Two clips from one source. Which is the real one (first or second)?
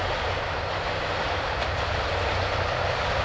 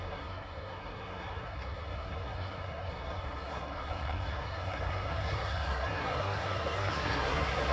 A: first